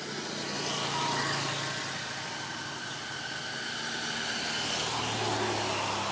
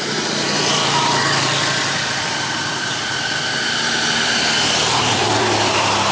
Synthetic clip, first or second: second